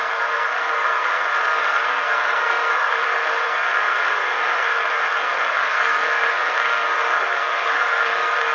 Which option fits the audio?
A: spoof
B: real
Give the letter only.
A